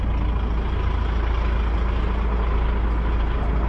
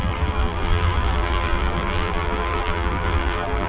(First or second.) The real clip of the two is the first